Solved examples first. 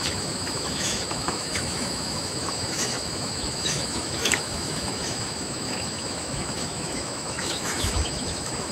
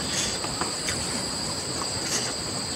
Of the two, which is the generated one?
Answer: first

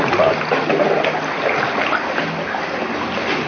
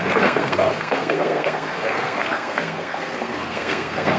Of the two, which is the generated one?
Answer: second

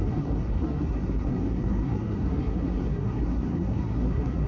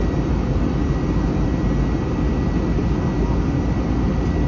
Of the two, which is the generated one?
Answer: first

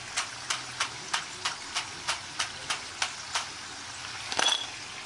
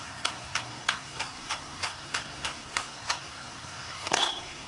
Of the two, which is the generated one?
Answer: second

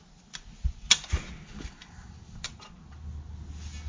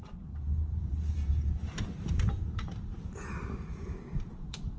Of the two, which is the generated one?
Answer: second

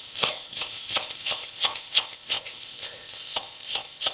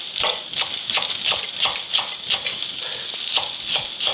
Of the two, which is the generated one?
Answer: first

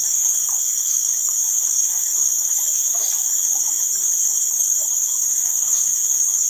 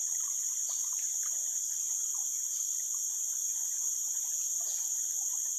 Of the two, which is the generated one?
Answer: first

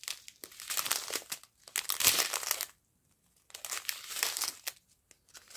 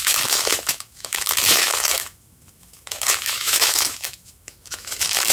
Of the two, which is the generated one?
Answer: second